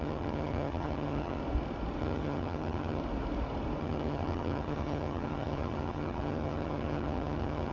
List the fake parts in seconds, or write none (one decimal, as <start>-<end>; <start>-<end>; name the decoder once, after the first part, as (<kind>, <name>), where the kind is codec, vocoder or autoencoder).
0.0-1.4 (vocoder, HiFi-GAN); 2.0-3.0; 3.8-7.7